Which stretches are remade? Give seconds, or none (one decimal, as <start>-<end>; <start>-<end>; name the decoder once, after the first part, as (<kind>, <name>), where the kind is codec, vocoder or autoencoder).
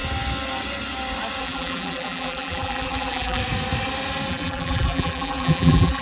1.4-3.4 (vocoder, BigVGAN v2); 4.3-6.0